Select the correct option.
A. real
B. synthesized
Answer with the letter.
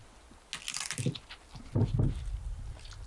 A